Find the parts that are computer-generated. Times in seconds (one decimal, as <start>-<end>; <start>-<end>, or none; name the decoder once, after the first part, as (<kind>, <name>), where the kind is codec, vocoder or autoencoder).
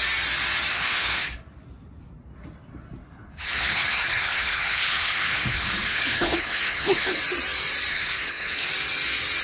0.7-1.4 (codec, HILCodec); 3.0-7.2; 7.9-8.7